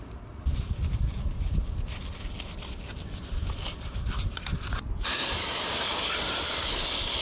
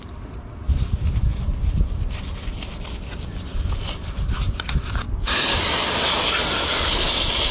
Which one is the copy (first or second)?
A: first